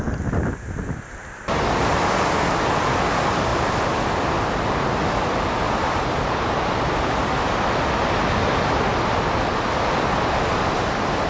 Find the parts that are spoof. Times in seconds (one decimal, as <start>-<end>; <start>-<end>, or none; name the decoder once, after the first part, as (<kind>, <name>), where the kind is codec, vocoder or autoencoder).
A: none